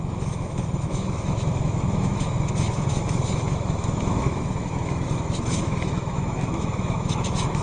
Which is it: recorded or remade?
remade